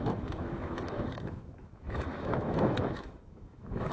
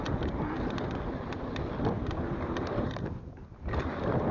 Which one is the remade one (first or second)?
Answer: first